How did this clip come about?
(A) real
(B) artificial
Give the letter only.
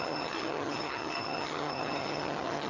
B